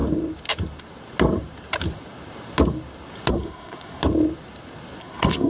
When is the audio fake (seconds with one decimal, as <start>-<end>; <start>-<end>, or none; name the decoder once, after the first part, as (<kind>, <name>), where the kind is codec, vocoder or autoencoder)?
3.3-4.0 (codec, SNAC); 5.0-5.5